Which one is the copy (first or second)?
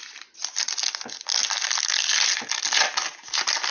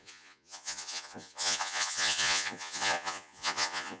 second